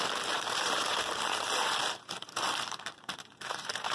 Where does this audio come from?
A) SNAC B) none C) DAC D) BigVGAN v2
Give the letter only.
D